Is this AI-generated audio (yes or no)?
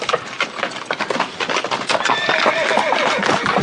no